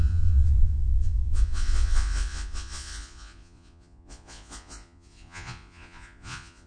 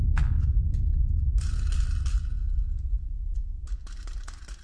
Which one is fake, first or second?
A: first